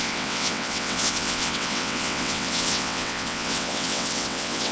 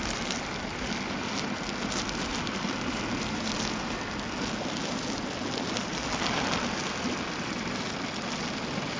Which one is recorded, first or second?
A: second